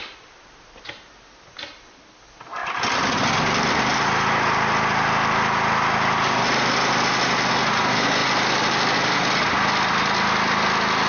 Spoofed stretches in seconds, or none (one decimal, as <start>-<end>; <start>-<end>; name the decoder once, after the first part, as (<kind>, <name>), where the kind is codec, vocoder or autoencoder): none